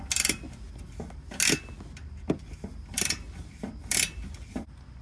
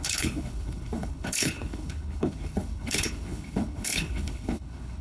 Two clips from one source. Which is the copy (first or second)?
second